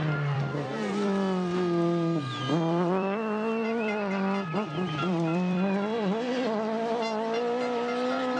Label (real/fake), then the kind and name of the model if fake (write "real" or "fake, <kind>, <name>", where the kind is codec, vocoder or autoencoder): fake, vocoder, BigVGAN v2